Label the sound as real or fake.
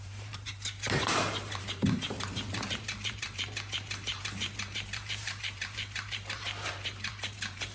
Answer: fake